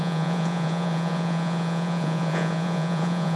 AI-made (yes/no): yes